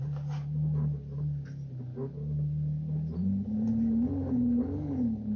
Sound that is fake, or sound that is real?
real